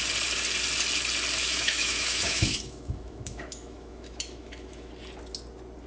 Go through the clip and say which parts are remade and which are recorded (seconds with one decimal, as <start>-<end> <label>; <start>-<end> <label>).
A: 0.0-1.4 recorded; 1.4-4.9 remade; 4.9-5.9 recorded